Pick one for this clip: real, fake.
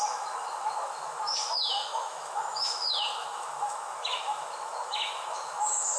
fake